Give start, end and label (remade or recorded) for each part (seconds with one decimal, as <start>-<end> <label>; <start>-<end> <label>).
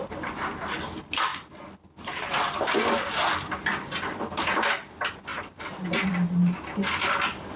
0.0-7.6 recorded